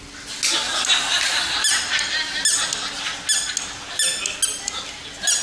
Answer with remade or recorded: recorded